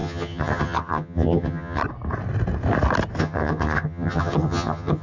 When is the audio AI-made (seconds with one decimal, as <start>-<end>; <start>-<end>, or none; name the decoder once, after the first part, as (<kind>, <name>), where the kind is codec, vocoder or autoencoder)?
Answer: 0.0-1.8 (vocoder, HiFi-GAN); 3.2-5.0